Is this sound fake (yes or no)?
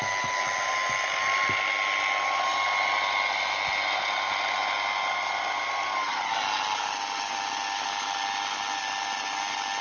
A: no